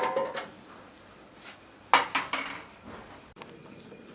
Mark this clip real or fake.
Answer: real